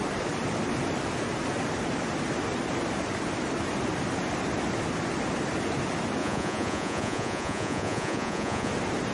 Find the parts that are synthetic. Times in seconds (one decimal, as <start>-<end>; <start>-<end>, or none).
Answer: 6.2-8.7

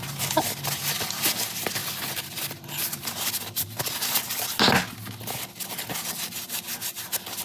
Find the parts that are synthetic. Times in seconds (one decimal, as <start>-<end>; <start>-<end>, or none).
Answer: none

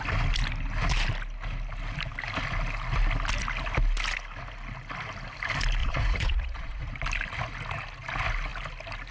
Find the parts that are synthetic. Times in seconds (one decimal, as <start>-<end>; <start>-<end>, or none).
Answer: 5.8-6.9

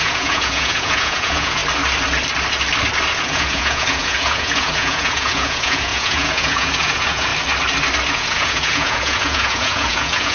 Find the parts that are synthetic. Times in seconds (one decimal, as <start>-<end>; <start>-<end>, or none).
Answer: 0.0-1.6; 3.2-7.3; 8.1-10.3

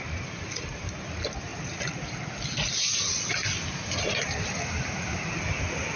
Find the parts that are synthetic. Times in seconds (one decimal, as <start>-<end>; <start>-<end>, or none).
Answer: none